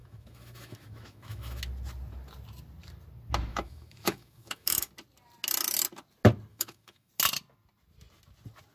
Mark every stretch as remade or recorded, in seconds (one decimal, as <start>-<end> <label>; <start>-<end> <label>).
0.0-1.6 remade; 1.6-3.5 recorded; 3.5-4.9 remade; 4.9-6.5 recorded; 6.5-7.1 remade; 7.1-8.7 recorded